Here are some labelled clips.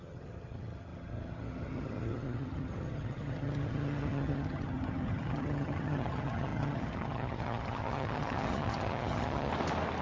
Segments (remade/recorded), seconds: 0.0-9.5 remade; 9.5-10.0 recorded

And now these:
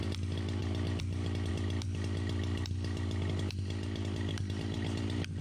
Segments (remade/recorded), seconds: 0.0-5.4 recorded